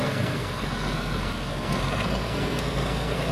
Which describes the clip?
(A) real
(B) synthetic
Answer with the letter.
B